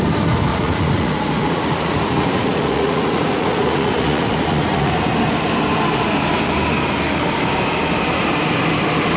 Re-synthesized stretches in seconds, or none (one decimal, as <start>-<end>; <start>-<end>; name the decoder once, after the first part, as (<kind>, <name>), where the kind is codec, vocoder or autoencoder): 0.5-4.9 (vocoder, Vocos)